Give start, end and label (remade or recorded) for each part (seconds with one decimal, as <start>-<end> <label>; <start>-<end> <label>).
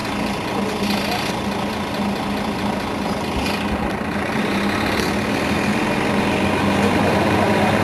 0.0-7.8 recorded